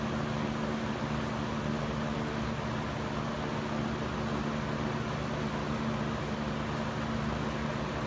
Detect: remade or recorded recorded